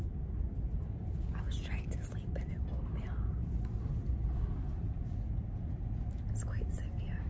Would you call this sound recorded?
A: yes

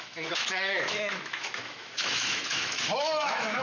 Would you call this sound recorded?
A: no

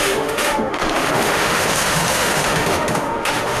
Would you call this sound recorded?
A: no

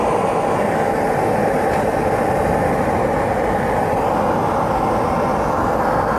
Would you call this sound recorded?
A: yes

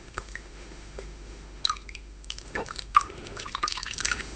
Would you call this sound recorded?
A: no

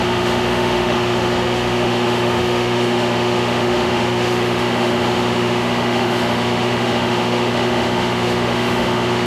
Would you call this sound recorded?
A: no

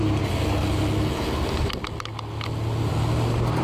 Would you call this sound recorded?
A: yes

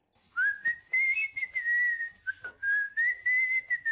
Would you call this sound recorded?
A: yes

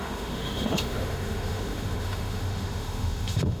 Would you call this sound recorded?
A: no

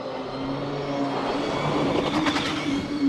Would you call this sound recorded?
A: yes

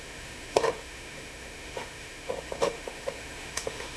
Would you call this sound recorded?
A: no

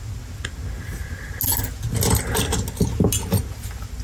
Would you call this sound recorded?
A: yes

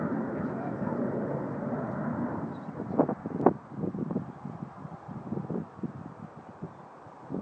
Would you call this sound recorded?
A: yes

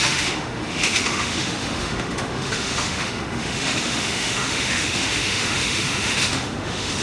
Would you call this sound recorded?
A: no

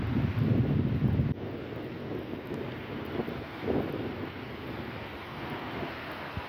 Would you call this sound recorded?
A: yes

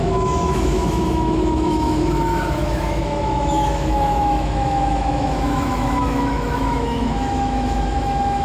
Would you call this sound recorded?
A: no